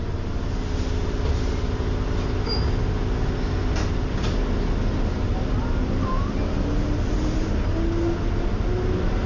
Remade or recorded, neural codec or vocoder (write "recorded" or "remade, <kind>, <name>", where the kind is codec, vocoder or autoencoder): recorded